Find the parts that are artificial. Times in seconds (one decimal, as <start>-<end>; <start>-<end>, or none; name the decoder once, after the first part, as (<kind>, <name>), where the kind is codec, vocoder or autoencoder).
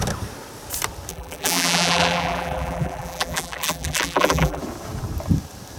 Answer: 1.1-4.6 (vocoder, BigVGAN v2)